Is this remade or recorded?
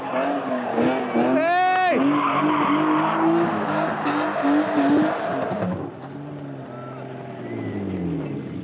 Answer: recorded